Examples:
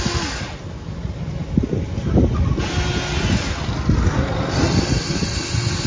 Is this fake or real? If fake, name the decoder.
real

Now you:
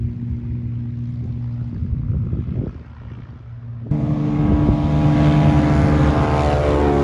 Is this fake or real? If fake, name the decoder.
real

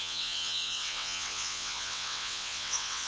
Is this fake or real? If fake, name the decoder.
fake, vocoder, WaveNeXt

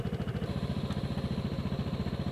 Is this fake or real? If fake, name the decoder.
real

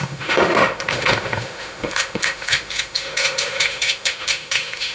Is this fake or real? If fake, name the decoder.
fake, autoencoder, DAC-VAE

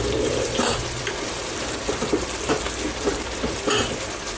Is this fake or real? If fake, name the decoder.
fake, vocoder, BigVGAN v2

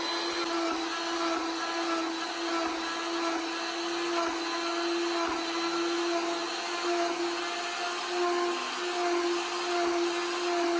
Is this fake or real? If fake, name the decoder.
real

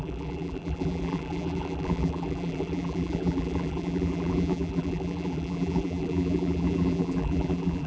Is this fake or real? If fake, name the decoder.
fake, vocoder, BigVGAN v2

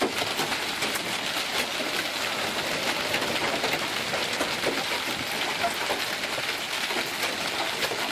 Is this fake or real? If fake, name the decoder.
real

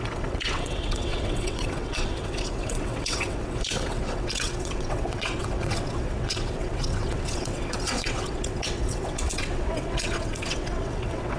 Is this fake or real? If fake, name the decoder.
fake, vocoder, WaveNeXt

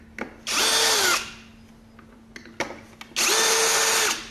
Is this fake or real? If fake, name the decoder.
real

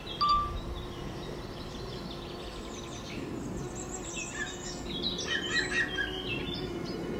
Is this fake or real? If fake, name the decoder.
real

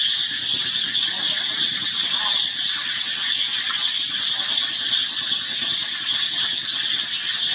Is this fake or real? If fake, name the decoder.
real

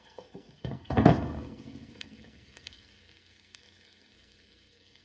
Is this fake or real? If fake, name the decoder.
fake, codec, SNAC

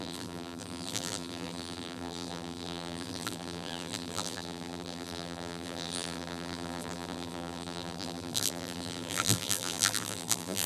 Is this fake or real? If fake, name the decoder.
fake, vocoder, BigVGAN v2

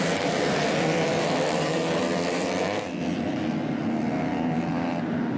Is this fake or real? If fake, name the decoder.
fake, vocoder, BigVGAN v2